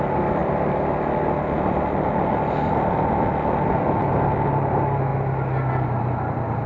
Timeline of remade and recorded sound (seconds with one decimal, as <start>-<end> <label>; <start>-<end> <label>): 0.0-6.7 recorded